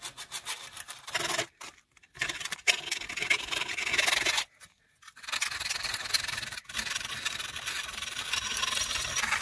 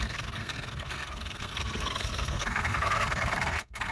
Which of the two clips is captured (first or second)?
first